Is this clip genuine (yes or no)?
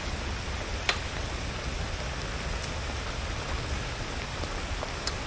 yes